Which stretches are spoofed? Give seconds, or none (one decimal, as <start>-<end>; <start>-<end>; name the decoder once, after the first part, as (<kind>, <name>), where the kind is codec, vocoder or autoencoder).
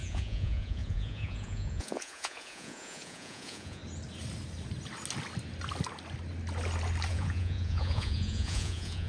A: 0.0-3.8 (vocoder, Vocos); 7.1-9.1